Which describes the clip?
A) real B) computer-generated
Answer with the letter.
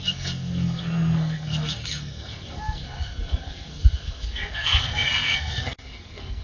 B